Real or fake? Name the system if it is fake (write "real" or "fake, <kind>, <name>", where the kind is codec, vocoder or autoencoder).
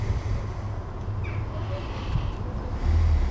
real